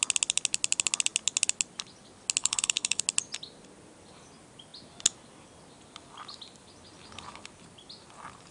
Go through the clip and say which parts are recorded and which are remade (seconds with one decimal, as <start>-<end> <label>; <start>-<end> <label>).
0.0-2.4 recorded; 2.4-3.0 remade; 3.0-8.5 recorded